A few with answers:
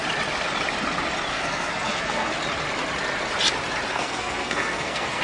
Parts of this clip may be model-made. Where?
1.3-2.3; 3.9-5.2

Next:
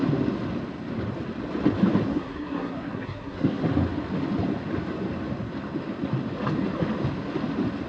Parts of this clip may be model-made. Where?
2.1-3.6

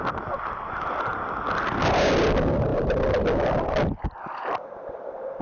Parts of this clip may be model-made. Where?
none

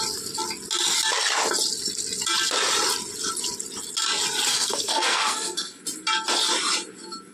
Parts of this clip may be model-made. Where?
4.5-5.8

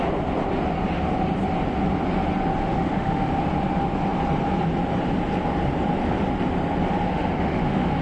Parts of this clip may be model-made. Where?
2.6-3.3; 7.1-8.0

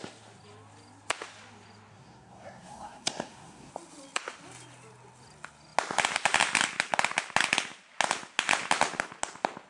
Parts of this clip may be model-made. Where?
1.9-3.7